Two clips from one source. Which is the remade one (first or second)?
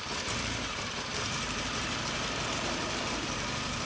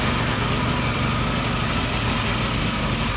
first